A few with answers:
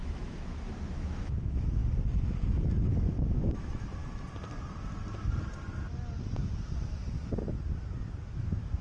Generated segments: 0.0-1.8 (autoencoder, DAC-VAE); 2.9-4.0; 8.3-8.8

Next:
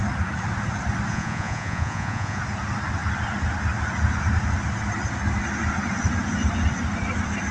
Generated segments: 1.1-2.4 (vocoder, Vocos)

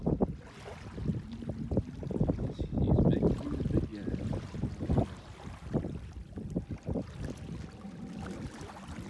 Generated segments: none